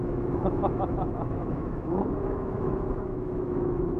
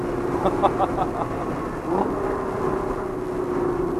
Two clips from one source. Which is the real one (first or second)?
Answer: second